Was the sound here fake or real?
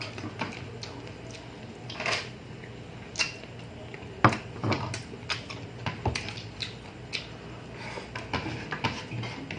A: real